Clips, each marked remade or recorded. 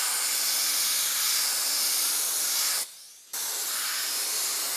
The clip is recorded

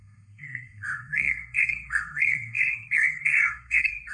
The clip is remade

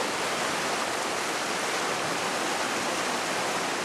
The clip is recorded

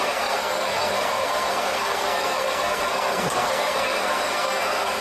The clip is remade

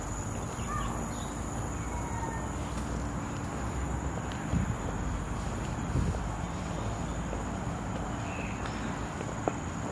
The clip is recorded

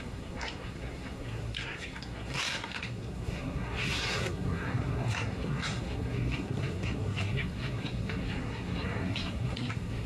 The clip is remade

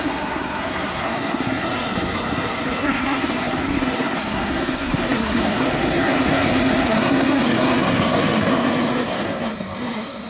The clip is remade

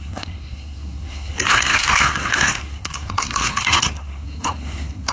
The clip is remade